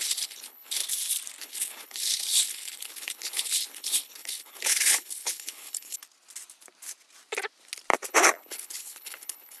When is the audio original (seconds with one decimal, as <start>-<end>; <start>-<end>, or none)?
0.8-1.4; 6.0-8.1